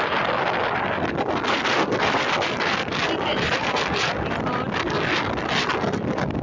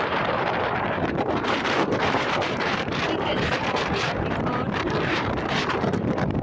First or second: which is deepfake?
second